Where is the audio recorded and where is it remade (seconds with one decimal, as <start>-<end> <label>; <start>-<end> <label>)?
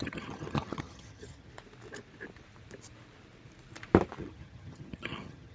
0.0-1.5 remade; 1.5-4.2 recorded; 4.2-5.5 remade